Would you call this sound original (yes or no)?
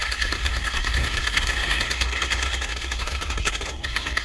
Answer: no